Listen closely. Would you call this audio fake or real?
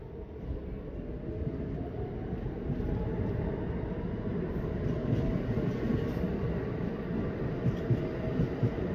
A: real